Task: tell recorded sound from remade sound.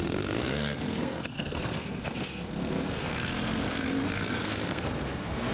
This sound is remade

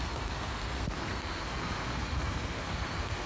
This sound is remade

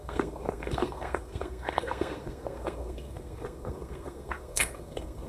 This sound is remade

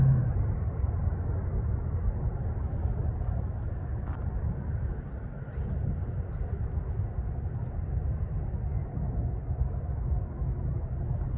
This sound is recorded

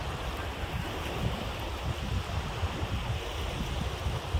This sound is recorded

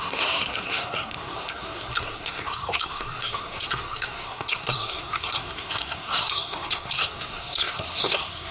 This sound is remade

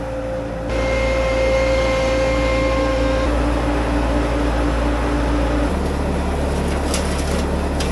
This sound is recorded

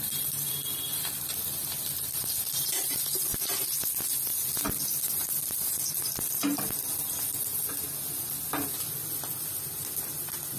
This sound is recorded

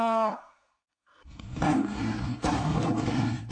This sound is remade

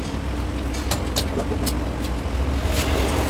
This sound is recorded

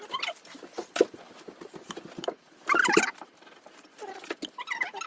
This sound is recorded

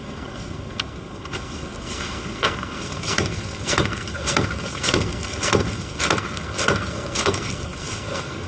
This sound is remade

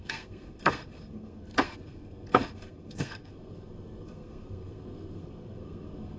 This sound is remade